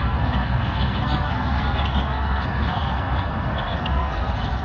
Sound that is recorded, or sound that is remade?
remade